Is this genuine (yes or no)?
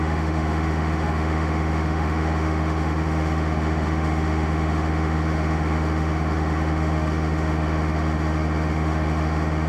no